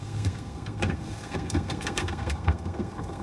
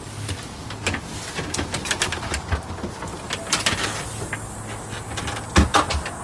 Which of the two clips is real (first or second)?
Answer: second